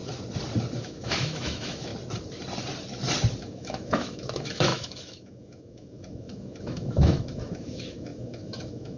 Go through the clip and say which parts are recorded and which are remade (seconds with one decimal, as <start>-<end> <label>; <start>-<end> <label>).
0.0-0.8 recorded; 0.8-1.9 remade; 1.9-3.4 recorded; 3.4-9.0 remade